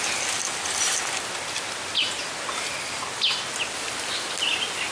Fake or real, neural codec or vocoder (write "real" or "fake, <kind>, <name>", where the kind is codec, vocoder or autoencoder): real